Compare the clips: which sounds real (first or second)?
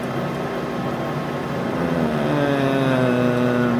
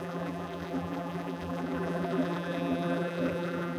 first